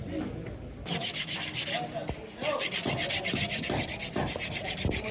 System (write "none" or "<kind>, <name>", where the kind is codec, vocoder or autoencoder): none